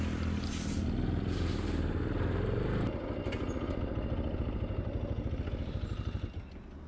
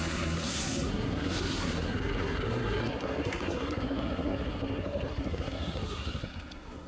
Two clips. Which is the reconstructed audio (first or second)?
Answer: second